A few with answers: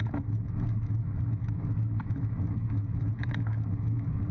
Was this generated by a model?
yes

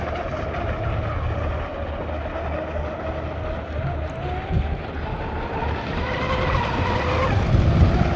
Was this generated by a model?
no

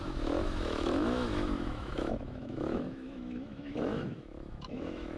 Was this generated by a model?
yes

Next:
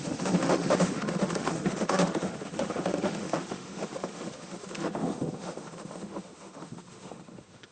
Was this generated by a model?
yes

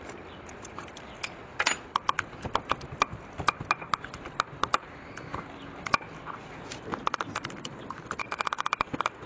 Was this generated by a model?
no